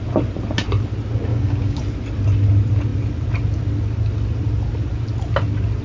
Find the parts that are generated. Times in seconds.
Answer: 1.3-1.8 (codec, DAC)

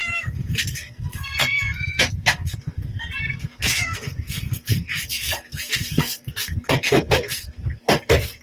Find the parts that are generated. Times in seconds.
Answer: 0.0-8.4 (codec, SNAC)